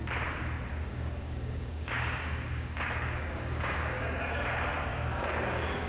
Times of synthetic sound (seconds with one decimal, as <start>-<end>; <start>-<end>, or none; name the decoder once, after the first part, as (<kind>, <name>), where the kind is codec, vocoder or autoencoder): 0.7-4.2 (codec, DAC); 4.9-5.9